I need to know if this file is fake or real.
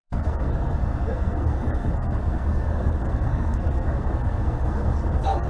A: fake